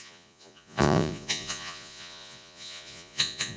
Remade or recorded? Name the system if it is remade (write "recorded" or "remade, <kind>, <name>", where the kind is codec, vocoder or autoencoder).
remade, vocoder, Vocos